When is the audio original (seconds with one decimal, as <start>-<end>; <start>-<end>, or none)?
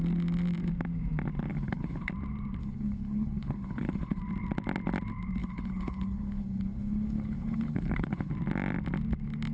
0.0-1.5; 2.1-2.6; 4.2-5.4; 8.3-9.5